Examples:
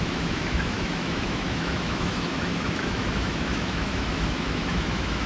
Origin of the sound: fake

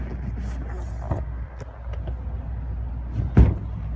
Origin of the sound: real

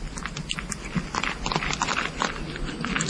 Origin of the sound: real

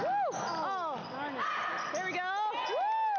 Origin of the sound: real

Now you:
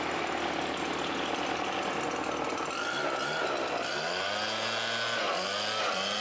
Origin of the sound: real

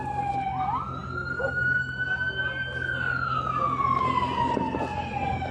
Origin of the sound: real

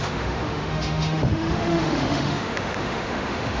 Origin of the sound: fake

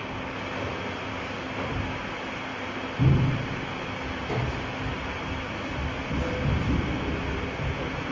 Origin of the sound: real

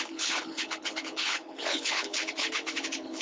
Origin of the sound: fake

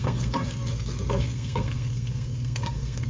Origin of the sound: fake